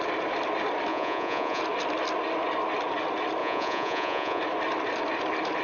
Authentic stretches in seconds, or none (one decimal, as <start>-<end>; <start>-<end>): 0.0-0.9; 1.6-3.4; 4.4-5.6